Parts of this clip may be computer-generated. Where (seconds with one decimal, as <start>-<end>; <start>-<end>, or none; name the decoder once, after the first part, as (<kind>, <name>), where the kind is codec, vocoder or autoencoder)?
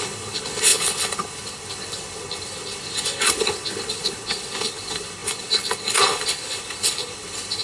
0.0-7.6 (codec, HILCodec)